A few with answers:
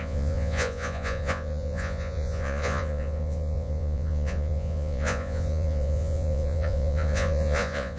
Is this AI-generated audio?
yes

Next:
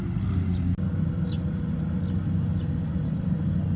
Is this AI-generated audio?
no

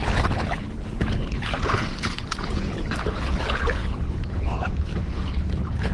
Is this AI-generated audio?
yes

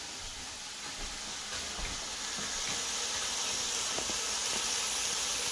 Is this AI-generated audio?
no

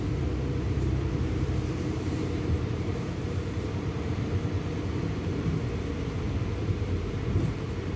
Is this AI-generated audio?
yes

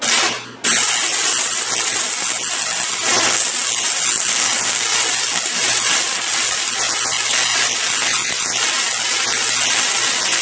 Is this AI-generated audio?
no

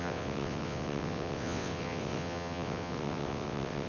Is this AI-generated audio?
yes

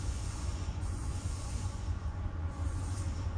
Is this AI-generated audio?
yes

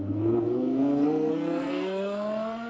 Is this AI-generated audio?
yes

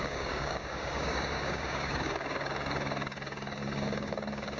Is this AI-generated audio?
yes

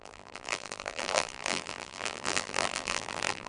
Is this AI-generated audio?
yes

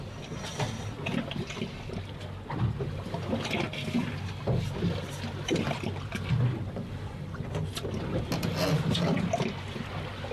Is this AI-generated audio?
no